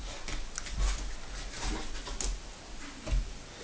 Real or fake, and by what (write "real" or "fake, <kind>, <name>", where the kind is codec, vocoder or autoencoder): real